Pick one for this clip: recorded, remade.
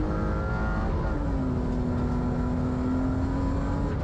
recorded